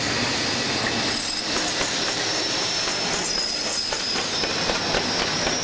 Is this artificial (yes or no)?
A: no